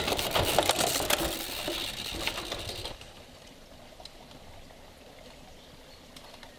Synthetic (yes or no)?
no